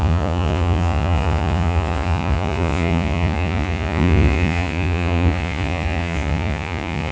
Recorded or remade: remade